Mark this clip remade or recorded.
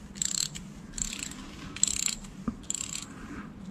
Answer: recorded